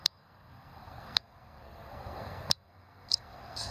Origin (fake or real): fake